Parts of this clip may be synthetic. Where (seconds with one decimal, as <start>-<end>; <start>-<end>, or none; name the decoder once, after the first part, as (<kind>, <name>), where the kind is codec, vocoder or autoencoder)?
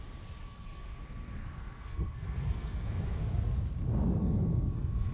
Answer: 0.4-1.0 (codec, SNAC); 1.4-3.2; 4.2-5.1